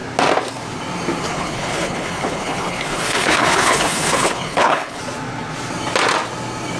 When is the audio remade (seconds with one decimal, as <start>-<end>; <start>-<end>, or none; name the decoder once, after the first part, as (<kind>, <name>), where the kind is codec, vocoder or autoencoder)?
1.3-5.0 (codec, HILCodec)